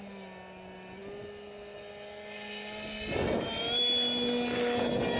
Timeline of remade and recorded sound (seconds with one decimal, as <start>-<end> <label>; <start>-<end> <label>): 0.0-5.2 recorded